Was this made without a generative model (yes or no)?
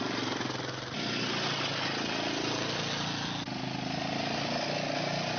yes